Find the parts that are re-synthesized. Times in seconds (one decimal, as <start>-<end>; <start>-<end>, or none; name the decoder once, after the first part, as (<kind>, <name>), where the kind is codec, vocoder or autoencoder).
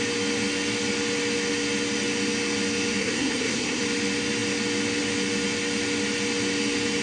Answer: 3.0-3.8 (codec, SNAC)